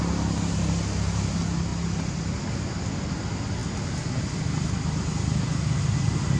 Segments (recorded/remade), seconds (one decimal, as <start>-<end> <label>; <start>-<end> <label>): 0.0-6.4 recorded